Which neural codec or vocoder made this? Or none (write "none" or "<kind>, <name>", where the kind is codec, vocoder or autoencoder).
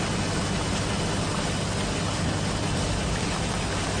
none